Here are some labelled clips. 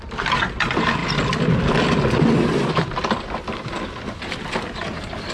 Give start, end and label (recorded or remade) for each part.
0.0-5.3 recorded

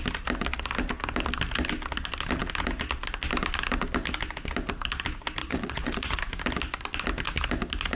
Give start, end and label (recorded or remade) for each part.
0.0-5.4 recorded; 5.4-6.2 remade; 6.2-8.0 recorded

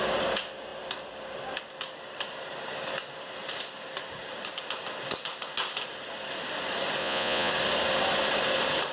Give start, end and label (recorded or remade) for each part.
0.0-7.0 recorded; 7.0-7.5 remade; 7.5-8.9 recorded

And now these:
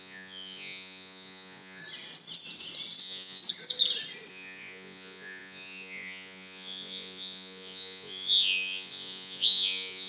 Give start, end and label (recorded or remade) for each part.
0.0-1.8 remade; 1.8-3.0 recorded; 3.0-3.4 remade; 3.4-4.3 recorded; 4.3-10.1 remade

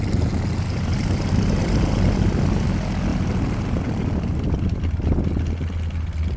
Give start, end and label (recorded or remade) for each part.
0.0-6.4 recorded

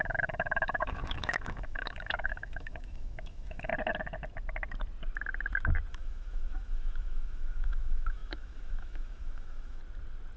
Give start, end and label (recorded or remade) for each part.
0.0-3.7 remade; 3.7-5.9 recorded; 5.9-9.8 remade; 9.8-10.4 recorded

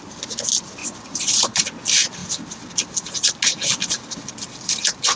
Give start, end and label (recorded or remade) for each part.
0.0-0.8 recorded; 0.8-1.6 remade; 1.6-5.2 recorded